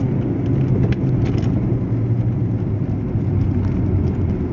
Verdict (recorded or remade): recorded